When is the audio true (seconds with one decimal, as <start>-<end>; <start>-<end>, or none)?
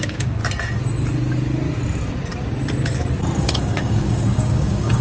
0.4-3.4